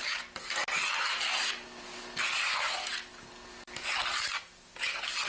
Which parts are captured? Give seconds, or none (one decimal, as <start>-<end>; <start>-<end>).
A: 0.0-5.3